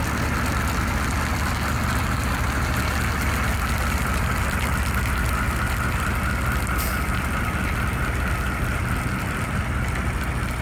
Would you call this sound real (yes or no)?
yes